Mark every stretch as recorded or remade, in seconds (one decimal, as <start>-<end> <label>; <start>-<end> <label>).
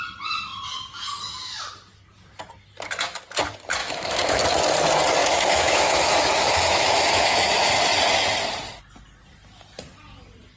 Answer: 0.0-3.8 recorded; 3.8-4.4 remade; 4.4-5.2 recorded; 5.2-7.7 remade; 7.7-10.6 recorded